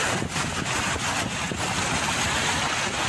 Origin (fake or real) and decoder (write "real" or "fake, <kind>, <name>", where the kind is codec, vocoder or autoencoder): real